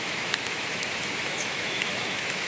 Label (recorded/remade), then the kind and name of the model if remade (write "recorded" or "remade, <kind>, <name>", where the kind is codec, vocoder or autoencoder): remade, autoencoder, DAC-VAE